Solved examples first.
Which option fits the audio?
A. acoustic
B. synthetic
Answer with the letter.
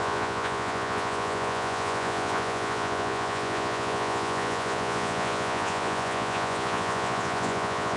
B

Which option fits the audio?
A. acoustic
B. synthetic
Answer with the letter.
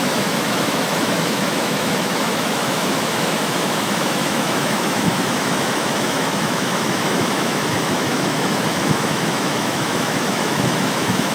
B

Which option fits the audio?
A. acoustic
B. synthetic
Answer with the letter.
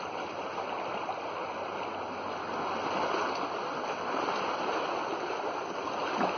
A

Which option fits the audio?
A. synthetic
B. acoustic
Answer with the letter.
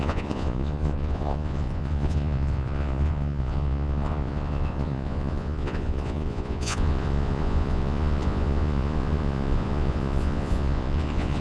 A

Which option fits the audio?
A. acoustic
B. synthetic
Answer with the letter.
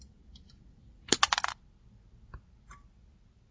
A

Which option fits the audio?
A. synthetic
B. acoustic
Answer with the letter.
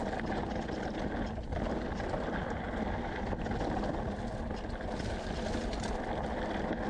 B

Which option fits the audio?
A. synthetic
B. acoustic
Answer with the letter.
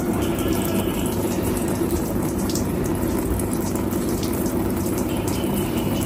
A